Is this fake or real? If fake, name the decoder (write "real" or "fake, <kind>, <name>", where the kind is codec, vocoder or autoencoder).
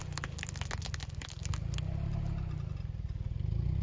real